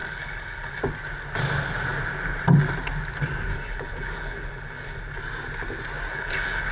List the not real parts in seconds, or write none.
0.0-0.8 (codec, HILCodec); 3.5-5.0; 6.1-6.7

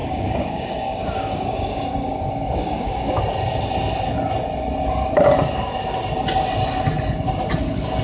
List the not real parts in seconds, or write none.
0.0-3.2 (codec, DAC)

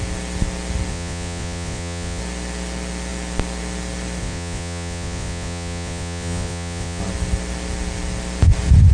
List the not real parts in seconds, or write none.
0.9-2.2 (vocoder, Vocos); 4.2-7.0

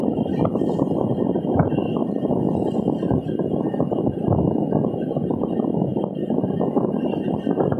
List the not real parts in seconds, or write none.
none

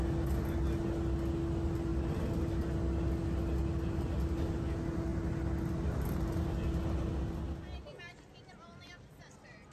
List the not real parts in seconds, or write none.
none

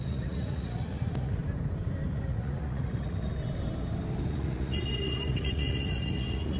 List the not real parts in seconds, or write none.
0.0-1.4 (vocoder, Vocos); 2.1-3.3; 4.3-6.6

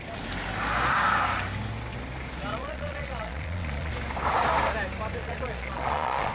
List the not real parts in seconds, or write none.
2.5-3.9 (vocoder, Vocos); 5.2-6.3

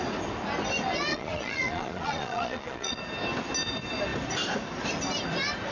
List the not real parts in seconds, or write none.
1.1-3.0 (vocoder, Vocos)